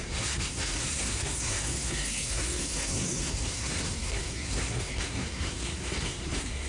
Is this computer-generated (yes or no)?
yes